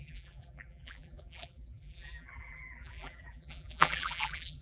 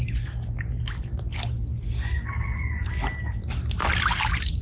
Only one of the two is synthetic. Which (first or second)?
first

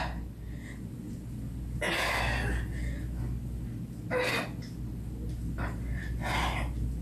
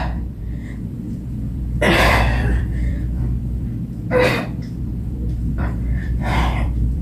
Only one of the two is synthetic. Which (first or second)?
second